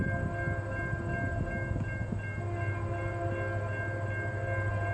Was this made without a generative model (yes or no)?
yes